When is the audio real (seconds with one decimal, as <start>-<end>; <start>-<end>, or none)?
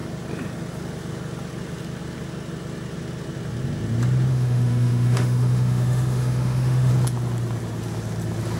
0.0-4.3; 6.9-8.6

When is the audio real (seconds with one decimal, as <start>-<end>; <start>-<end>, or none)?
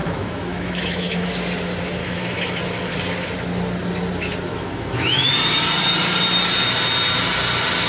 1.3-2.0; 2.6-4.5; 5.3-7.9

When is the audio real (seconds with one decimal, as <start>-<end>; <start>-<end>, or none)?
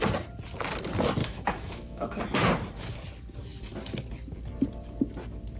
0.0-1.2; 2.2-5.6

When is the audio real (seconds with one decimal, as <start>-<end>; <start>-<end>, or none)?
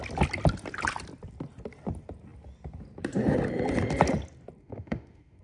0.0-4.6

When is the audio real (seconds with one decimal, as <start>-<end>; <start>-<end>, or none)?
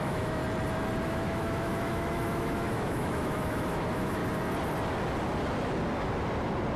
0.4-1.0; 4.2-6.8